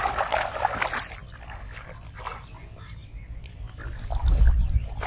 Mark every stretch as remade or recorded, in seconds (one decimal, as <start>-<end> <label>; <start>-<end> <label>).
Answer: 0.0-5.1 recorded